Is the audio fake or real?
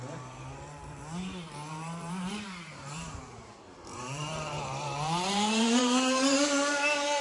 fake